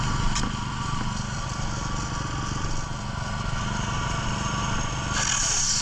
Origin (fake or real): real